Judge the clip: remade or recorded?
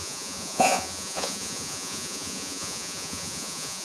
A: remade